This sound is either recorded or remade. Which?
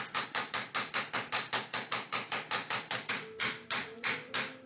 recorded